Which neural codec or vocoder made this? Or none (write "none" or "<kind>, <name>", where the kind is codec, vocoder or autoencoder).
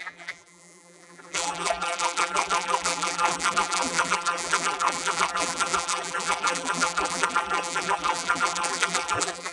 vocoder, BigVGAN v2